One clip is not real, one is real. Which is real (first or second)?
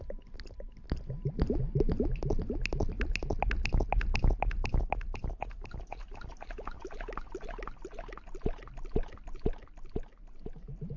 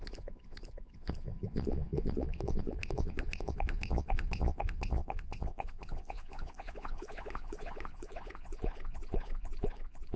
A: first